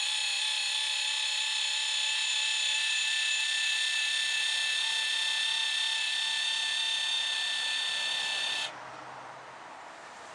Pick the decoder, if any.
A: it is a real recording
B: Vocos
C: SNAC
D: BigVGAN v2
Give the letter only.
A